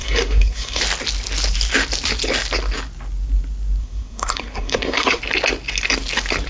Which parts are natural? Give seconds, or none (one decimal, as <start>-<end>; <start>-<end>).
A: 0.8-3.8; 5.2-6.5